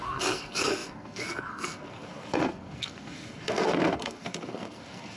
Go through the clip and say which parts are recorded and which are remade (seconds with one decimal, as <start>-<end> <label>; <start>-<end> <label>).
0.0-5.2 remade

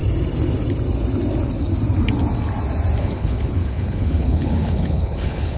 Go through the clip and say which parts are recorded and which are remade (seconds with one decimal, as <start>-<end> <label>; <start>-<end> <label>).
0.0-3.0 recorded; 3.0-5.6 remade

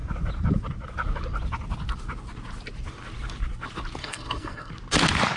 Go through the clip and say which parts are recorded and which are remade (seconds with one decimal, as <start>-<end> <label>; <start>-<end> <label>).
0.0-4.0 recorded; 4.0-4.7 remade; 4.7-5.4 recorded

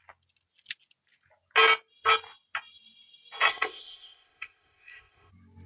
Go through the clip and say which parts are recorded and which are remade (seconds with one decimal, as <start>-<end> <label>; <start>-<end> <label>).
0.0-3.5 recorded; 3.5-5.3 remade; 5.3-5.7 recorded

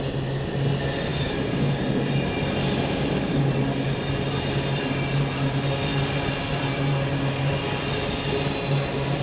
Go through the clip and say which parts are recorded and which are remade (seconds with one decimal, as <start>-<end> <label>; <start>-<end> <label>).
0.0-1.1 recorded; 1.1-1.8 remade; 1.8-2.6 recorded; 2.6-3.5 remade; 3.5-9.2 recorded